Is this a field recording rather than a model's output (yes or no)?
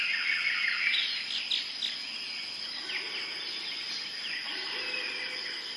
yes